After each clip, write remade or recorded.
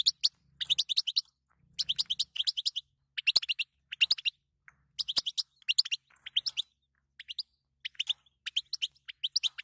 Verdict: recorded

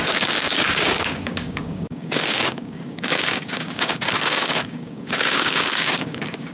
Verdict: remade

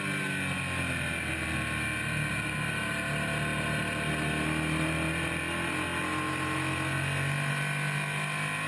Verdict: recorded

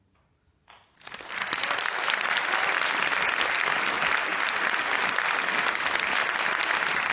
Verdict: recorded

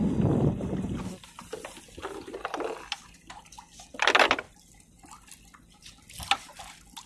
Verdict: recorded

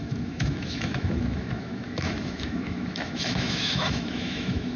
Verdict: remade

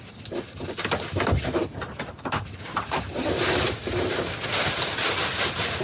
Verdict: recorded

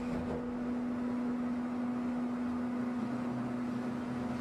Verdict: recorded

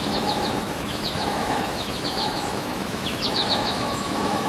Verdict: remade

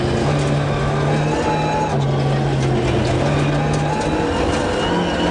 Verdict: recorded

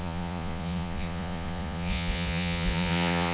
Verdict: remade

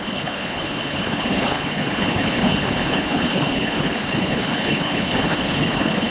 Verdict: remade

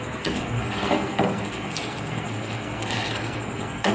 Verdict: remade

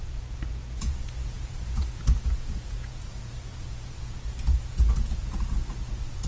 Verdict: remade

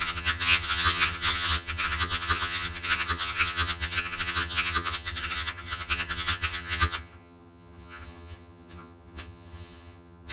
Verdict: remade